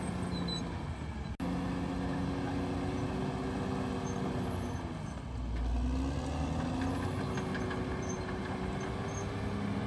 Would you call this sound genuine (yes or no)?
yes